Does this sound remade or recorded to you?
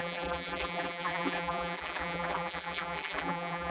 remade